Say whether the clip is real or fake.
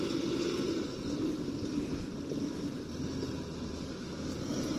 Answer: real